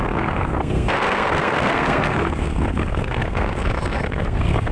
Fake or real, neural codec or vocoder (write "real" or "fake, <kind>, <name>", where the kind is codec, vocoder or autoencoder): fake, codec, SNAC